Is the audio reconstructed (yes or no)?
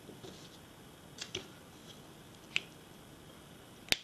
no